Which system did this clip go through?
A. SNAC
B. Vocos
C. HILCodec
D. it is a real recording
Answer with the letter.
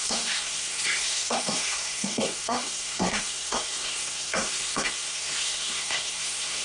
A